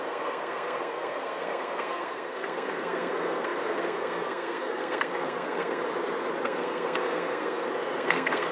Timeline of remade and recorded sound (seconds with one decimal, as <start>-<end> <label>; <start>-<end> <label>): 0.0-5.8 remade; 5.8-6.4 recorded; 6.4-8.5 remade